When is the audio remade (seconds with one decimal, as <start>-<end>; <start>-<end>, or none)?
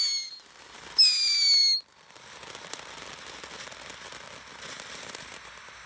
none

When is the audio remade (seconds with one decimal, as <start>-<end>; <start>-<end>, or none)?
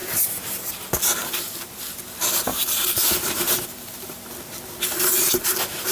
1.2-2.0; 2.5-4.3